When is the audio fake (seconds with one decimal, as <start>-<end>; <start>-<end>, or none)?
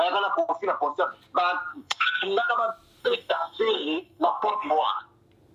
1.7-2.5; 3.0-5.0